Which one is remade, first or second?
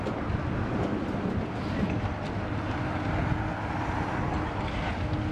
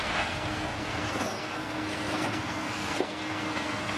second